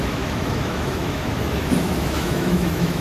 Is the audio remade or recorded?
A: remade